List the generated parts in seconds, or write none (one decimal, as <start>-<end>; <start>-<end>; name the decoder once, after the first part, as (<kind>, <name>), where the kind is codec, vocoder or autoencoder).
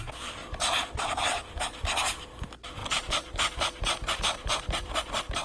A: 0.4-2.0 (vocoder, BigVGAN v2); 2.8-4.2